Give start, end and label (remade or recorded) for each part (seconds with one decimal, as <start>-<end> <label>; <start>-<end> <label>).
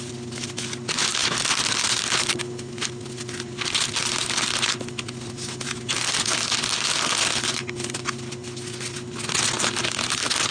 0.0-10.5 recorded